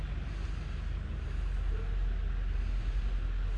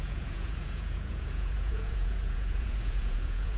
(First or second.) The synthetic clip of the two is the second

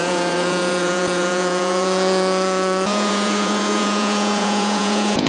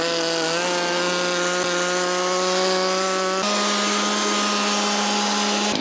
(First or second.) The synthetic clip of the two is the first